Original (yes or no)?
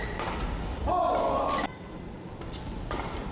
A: yes